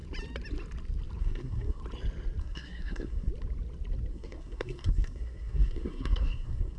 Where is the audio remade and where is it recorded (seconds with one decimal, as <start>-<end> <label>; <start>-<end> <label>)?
0.0-1.2 recorded; 1.2-1.8 remade; 1.8-2.4 recorded; 2.4-3.3 remade; 3.3-4.1 recorded; 4.1-6.8 remade